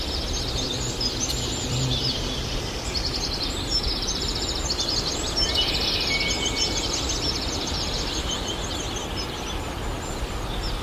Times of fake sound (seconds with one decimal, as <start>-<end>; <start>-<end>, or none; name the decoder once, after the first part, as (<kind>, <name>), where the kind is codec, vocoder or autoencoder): 0.0-4.3 (vocoder, BigVGAN v2); 9.2-10.8